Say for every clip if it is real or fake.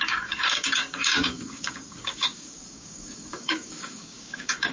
fake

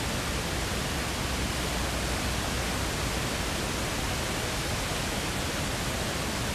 real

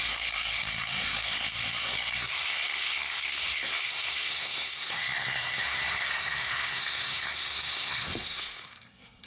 fake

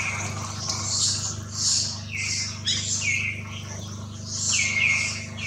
real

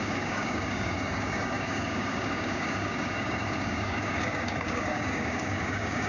fake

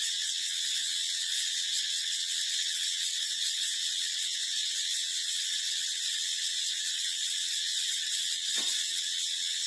fake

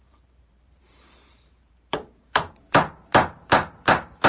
fake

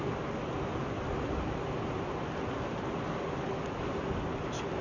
real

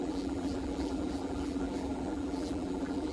fake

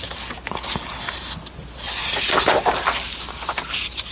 real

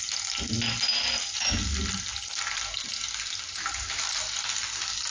real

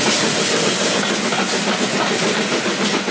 real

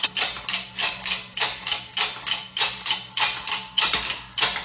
real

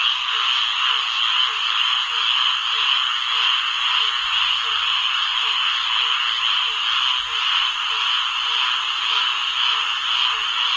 real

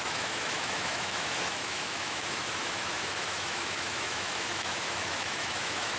fake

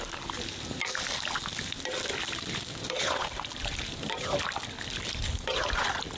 real